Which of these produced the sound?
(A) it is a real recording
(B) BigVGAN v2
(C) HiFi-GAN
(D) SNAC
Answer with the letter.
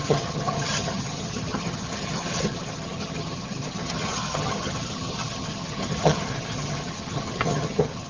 C